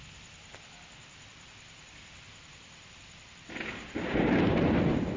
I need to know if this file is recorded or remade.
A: recorded